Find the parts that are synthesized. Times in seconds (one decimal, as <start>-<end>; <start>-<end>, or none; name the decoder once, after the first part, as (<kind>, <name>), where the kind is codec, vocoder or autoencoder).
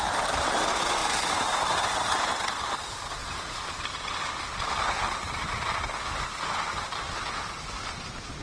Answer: 1.0-1.8 (vocoder, BigVGAN v2); 3.2-3.9